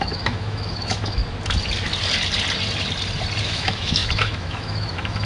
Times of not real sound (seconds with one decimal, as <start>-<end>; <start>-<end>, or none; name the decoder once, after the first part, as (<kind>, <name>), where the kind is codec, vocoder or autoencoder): 0.0-1.2 (autoencoder, DAC-VAE); 3.4-5.2